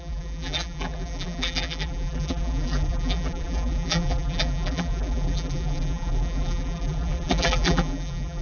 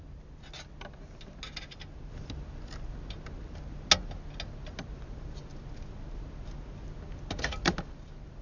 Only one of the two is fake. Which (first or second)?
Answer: first